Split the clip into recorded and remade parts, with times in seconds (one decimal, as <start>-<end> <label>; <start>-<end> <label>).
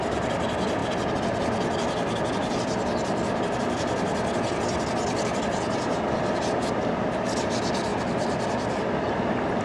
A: 0.0-9.6 recorded